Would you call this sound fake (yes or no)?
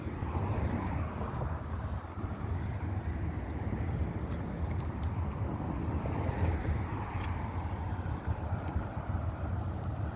no